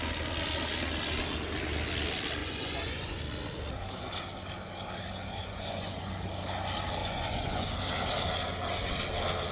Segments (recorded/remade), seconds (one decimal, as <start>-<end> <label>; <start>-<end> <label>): 0.0-2.4 recorded; 2.4-3.2 remade; 3.2-5.4 recorded; 5.4-6.1 remade; 6.1-7.0 recorded; 7.0-7.7 remade; 7.7-9.5 recorded